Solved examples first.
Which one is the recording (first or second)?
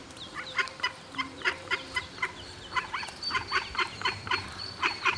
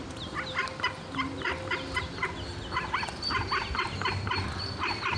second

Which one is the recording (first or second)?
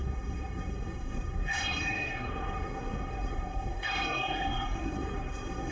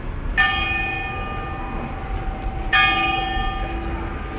second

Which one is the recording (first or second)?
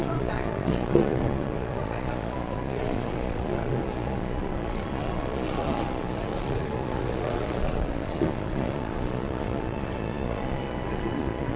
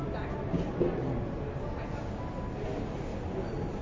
second